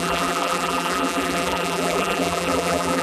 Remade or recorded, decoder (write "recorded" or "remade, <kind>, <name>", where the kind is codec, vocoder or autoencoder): remade, vocoder, BigVGAN v2